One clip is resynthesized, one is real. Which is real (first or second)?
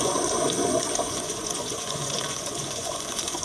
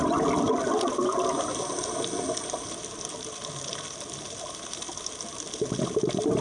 second